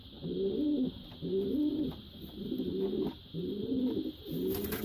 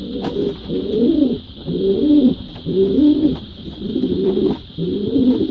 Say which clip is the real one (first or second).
first